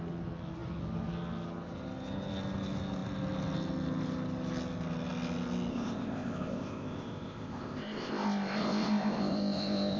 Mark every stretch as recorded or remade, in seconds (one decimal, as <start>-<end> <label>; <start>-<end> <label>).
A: 0.0-5.7 recorded; 5.7-10.0 remade